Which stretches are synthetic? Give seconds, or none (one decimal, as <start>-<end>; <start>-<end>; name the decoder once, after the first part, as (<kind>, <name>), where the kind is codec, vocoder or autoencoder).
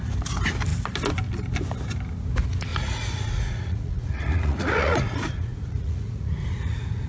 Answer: 2.7-7.1 (vocoder, Vocos)